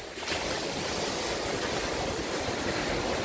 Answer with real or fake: real